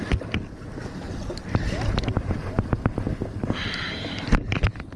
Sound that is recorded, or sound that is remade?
recorded